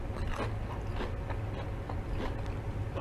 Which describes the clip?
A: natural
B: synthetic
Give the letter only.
A